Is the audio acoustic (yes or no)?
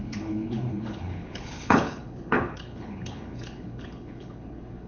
no